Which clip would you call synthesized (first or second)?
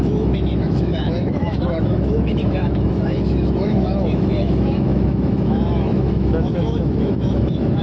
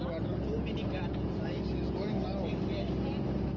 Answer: first